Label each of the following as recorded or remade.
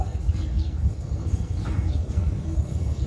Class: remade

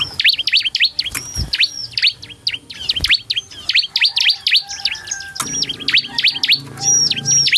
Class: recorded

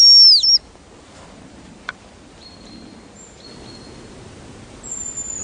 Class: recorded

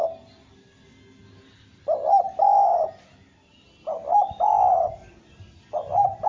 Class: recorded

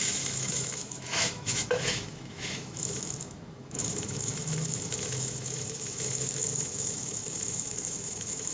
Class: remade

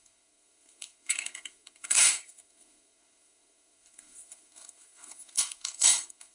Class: remade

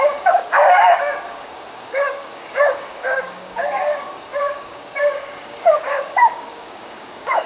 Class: remade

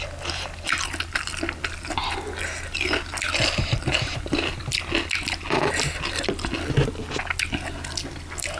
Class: recorded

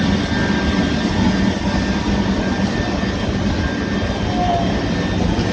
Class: recorded